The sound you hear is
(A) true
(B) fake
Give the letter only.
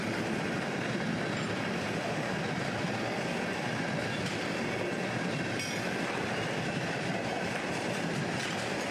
B